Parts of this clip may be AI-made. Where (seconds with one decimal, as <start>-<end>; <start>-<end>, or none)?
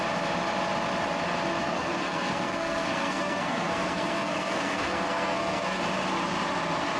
1.6-5.8